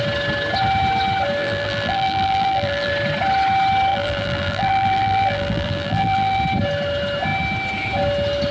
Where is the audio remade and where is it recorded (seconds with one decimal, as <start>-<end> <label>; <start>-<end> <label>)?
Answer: 0.0-1.4 recorded; 1.4-2.9 remade; 2.9-3.9 recorded; 3.9-6.4 remade; 6.4-8.5 recorded